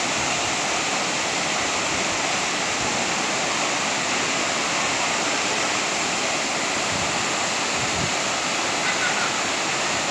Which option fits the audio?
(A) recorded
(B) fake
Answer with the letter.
A